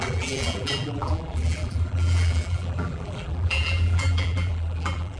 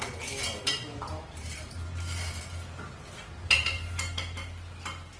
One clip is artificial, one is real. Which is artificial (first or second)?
first